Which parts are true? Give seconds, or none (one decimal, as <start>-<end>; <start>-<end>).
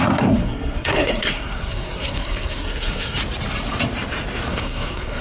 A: 3.2-4.5